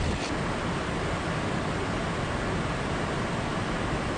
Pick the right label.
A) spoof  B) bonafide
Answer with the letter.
B